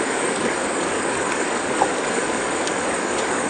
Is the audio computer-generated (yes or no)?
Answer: yes